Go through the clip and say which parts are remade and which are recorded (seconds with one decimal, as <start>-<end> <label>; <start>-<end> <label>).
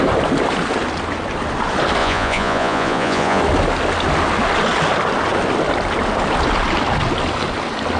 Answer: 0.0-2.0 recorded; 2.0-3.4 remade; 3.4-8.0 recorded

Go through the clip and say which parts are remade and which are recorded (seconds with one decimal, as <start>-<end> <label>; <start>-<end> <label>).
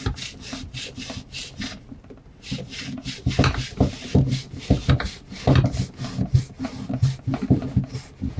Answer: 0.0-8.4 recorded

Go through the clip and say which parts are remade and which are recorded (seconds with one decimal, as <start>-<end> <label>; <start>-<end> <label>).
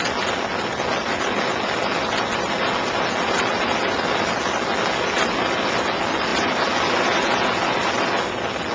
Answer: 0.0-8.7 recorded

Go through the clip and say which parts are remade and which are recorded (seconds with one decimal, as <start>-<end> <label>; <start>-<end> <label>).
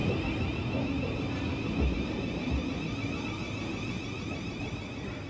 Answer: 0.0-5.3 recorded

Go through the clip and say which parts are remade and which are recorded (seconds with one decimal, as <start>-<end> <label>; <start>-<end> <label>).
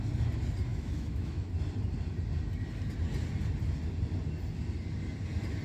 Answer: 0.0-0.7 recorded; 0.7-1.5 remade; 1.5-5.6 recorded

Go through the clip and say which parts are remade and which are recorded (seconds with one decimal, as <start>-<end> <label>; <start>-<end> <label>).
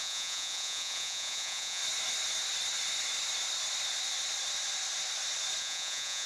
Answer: 0.0-1.8 remade; 1.8-5.6 recorded; 5.6-6.3 remade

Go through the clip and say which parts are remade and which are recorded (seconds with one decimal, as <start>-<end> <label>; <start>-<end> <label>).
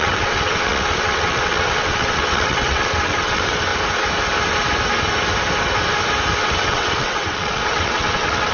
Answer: 0.0-3.7 remade; 3.7-6.4 recorded; 6.4-8.5 remade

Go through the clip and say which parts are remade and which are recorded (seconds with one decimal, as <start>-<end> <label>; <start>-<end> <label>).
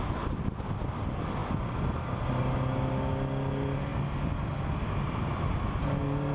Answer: 0.0-6.3 recorded